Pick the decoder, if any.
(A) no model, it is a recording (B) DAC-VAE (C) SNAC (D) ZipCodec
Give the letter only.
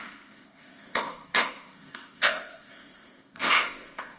D